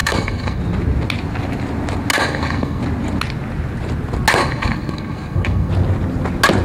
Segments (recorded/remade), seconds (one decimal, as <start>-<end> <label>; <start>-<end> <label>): 0.0-0.6 remade; 0.6-2.1 recorded; 2.1-2.8 remade; 2.8-4.4 recorded; 4.4-5.7 remade; 5.7-6.6 recorded